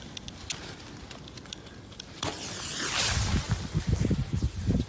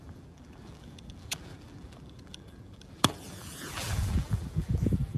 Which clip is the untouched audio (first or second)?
first